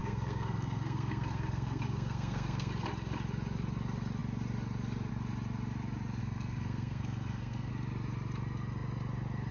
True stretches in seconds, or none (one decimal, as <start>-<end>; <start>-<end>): 2.7-6.2; 7.7-9.5